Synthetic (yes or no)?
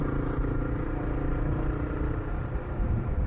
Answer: yes